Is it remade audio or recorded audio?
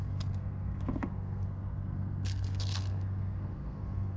remade